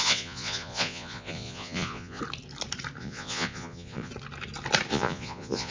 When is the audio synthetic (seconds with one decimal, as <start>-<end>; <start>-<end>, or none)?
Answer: 0.0-2.2; 3.0-4.1; 4.9-5.7